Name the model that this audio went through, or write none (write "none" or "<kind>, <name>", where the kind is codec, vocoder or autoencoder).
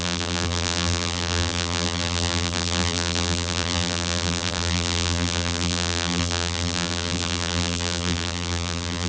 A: vocoder, BigVGAN v2